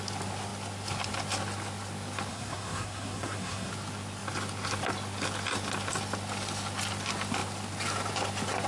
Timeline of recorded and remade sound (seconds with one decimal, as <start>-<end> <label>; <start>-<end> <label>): 0.0-2.3 recorded; 2.3-3.7 remade; 3.7-8.7 recorded